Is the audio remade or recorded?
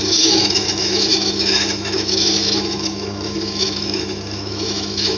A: remade